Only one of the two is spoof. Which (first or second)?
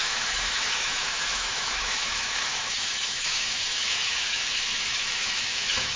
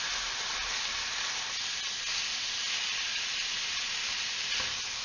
first